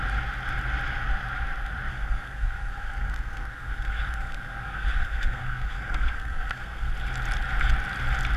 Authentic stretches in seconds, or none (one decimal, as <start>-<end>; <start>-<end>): 0.0-1.9; 6.9-8.4